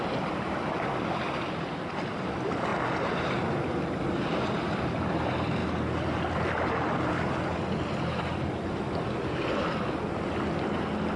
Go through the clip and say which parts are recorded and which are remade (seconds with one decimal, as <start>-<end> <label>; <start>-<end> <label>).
0.0-5.6 remade; 5.6-7.1 recorded; 7.1-7.5 remade; 7.5-11.2 recorded